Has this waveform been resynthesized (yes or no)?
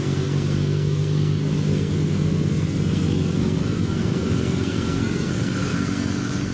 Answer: yes